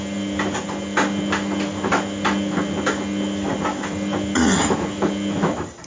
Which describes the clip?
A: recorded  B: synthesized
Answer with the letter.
A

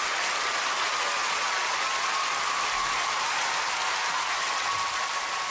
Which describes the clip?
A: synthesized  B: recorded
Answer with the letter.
B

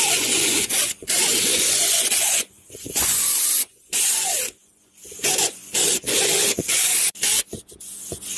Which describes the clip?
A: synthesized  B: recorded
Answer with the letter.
A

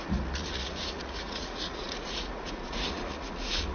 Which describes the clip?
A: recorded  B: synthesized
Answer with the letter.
B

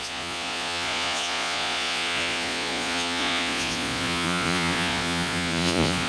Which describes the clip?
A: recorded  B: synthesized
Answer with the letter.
B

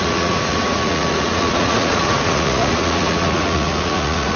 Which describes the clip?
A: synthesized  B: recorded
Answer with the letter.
A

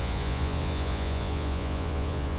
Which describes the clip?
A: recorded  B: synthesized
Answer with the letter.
B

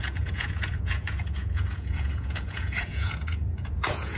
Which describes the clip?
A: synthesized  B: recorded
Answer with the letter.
A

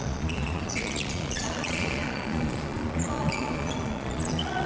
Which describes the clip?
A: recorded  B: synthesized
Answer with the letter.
B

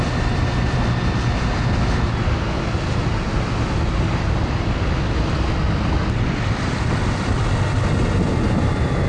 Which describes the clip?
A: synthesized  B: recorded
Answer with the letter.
B